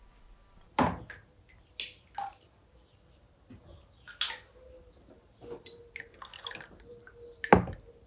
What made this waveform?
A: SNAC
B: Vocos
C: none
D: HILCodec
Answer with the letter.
C